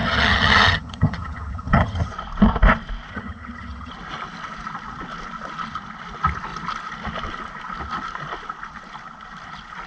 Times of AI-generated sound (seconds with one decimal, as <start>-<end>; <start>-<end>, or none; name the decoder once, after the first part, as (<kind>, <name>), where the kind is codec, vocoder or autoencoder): 0.0-2.1 (vocoder, HiFi-GAN); 3.1-3.9